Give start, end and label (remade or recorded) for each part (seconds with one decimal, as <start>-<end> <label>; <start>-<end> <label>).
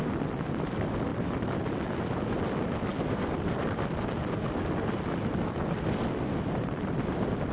0.0-7.5 recorded